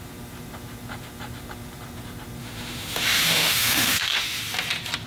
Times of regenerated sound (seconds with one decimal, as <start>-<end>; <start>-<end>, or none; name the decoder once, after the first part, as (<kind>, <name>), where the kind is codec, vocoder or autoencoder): 2.4-4.4 (autoencoder, DAC-VAE)